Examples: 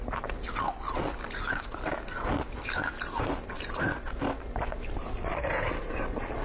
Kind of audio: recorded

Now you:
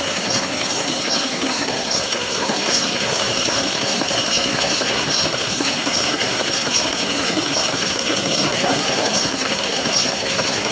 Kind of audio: remade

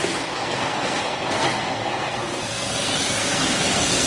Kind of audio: remade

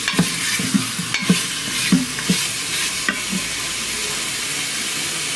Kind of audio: recorded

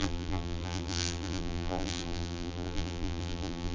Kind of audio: remade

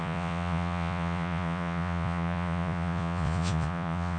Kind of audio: remade